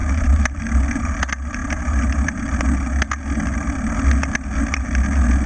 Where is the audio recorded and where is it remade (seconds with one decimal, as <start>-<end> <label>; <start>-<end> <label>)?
0.0-0.6 remade; 0.6-5.5 recorded

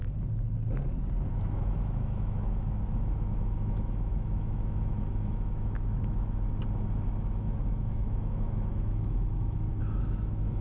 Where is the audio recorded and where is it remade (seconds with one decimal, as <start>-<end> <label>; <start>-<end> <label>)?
0.0-1.3 recorded; 1.3-6.5 remade; 6.5-7.2 recorded; 7.2-10.6 remade

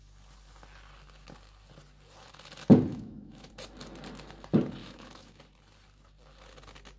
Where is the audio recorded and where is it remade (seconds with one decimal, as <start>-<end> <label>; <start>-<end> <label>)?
0.0-2.9 recorded; 2.9-3.5 remade; 3.5-4.8 recorded; 4.8-5.4 remade; 5.4-7.0 recorded

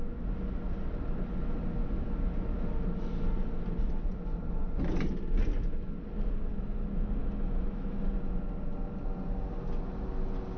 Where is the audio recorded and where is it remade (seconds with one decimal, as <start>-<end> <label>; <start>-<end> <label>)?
0.0-7.2 recorded; 7.2-8.0 remade; 8.0-10.6 recorded

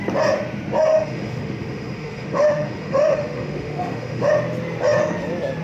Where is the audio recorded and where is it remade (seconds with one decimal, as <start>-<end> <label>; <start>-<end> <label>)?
0.0-0.9 recorded; 0.9-4.3 remade; 4.3-5.6 recorded

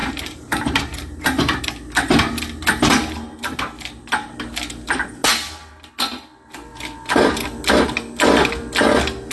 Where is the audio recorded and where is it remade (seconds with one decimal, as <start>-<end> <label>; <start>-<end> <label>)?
0.0-1.6 remade; 1.6-9.3 recorded

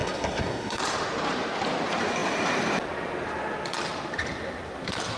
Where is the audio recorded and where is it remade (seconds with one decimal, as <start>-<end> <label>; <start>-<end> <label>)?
0.0-0.8 remade; 0.8-5.2 recorded

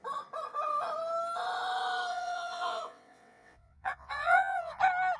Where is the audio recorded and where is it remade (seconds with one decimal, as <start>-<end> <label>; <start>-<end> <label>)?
0.0-2.1 recorded; 2.1-4.8 remade; 4.8-5.2 recorded